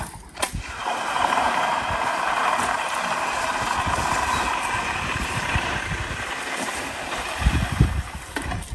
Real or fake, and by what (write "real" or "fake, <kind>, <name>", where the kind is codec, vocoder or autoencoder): fake, vocoder, BigVGAN v2